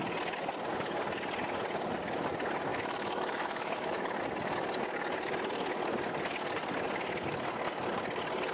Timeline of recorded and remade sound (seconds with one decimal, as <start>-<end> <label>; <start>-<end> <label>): 0.0-2.7 recorded; 2.7-4.2 remade; 4.2-8.5 recorded